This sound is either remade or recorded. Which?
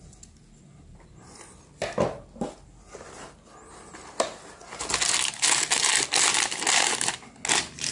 recorded